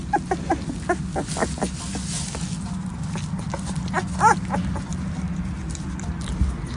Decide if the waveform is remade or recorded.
recorded